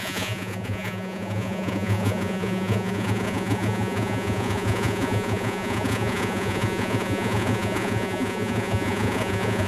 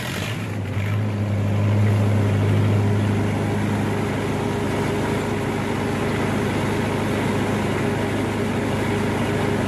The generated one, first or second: first